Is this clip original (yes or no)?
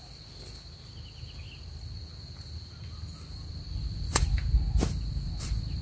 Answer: yes